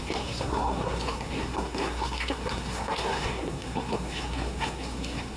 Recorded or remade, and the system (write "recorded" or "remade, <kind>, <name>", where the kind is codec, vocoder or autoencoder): remade, codec, SNAC